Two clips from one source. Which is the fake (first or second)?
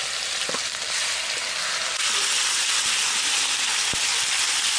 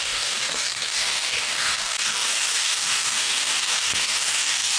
second